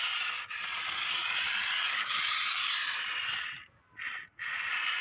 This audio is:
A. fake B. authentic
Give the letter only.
B